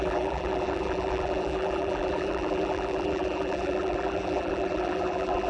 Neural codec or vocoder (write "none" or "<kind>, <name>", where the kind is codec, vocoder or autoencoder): vocoder, BigVGAN v2